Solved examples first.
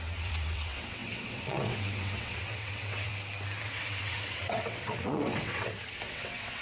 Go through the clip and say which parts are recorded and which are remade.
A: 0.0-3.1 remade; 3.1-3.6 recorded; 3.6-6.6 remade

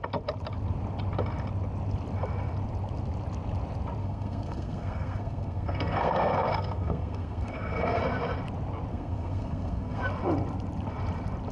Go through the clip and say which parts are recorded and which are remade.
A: 0.0-4.0 recorded; 4.0-8.0 remade; 8.0-8.9 recorded; 8.9-10.0 remade; 10.0-11.5 recorded

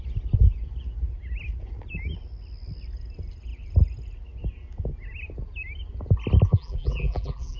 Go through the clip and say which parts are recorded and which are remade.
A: 0.0-6.5 recorded; 6.5-7.6 remade

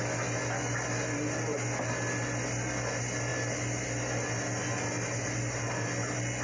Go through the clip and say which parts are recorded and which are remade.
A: 0.0-6.4 recorded

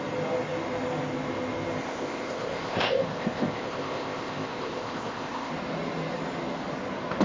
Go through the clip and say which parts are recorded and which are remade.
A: 0.0-1.8 recorded; 1.8-5.5 remade; 5.5-7.2 recorded